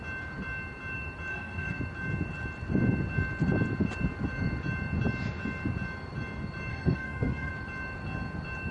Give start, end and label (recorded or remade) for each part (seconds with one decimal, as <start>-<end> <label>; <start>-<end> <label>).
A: 0.0-1.3 recorded; 1.3-1.8 remade; 1.8-6.7 recorded; 6.7-7.5 remade; 7.5-8.7 recorded